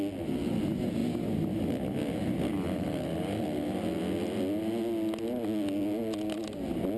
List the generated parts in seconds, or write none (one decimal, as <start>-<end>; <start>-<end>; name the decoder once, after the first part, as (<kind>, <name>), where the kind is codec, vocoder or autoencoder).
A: none